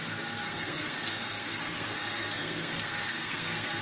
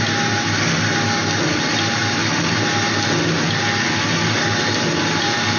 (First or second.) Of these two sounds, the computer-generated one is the first